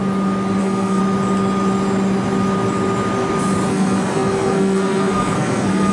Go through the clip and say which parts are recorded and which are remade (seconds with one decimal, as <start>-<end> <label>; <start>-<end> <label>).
0.0-0.6 recorded; 0.6-1.0 remade; 1.0-3.7 recorded; 3.7-5.9 remade